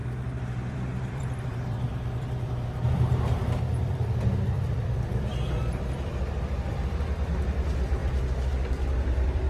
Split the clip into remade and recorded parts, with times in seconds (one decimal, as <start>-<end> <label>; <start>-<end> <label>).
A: 0.0-9.5 remade